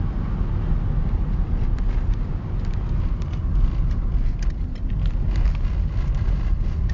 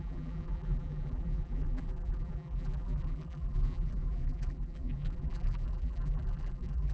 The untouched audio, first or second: first